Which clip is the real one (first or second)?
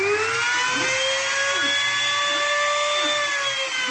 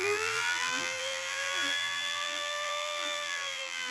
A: first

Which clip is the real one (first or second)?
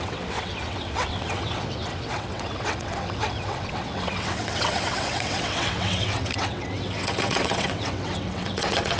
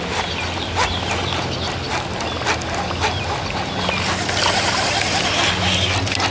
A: second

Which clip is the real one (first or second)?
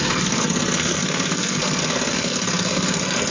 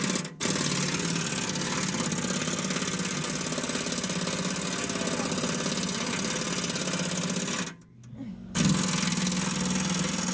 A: second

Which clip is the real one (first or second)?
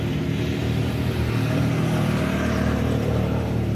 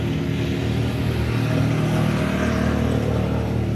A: second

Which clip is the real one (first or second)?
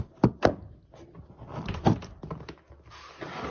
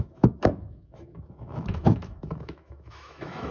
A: first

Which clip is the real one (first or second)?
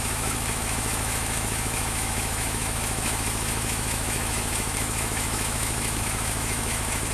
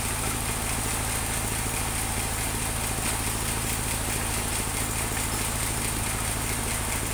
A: second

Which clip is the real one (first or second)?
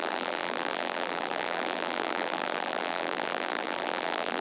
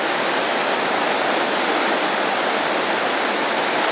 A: second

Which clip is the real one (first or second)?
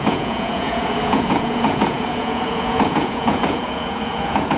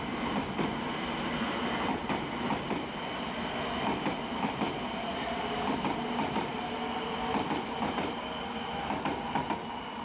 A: second